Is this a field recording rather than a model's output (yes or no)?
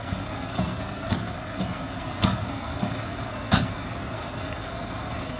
no